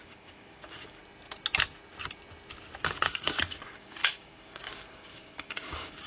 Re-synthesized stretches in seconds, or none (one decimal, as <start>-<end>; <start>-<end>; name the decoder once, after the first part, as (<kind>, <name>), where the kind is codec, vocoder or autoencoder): 0.0-1.0 (codec, DAC); 2.8-6.1